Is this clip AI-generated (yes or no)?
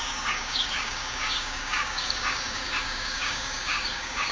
yes